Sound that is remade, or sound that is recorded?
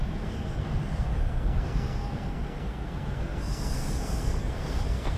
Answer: remade